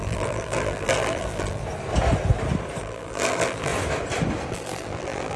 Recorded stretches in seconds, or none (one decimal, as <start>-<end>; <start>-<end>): 1.6-2.8; 3.7-4.5